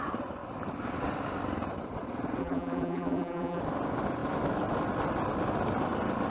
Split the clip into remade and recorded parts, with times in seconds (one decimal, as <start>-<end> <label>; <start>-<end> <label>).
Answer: 0.0-2.4 recorded; 2.4-3.6 remade; 3.6-6.3 recorded